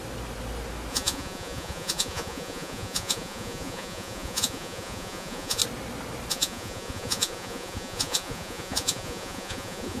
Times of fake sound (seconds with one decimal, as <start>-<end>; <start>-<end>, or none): 0.9-5.6; 6.3-10.0

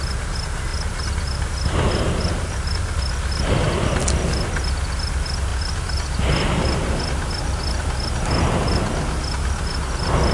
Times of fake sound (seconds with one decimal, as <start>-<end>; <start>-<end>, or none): none